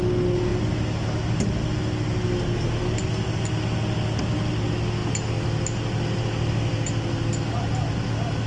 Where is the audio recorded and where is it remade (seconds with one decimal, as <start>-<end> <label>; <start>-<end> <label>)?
0.0-8.5 recorded